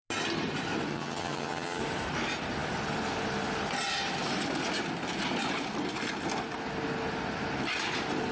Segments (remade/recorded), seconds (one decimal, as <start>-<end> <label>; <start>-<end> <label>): 0.0-0.9 recorded; 0.9-1.8 remade; 1.8-8.3 recorded